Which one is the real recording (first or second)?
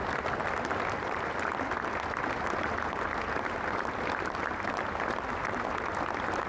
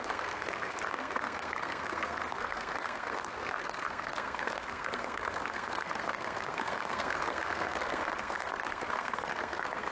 first